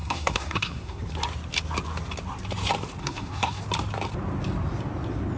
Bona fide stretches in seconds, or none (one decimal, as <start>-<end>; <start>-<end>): 1.0-3.0; 3.6-5.4